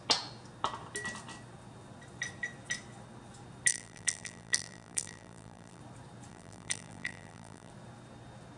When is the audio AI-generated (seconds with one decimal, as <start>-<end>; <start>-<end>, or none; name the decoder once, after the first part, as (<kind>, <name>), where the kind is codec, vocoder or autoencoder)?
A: 3.7-5.8 (vocoder, BigVGAN v2); 6.3-7.7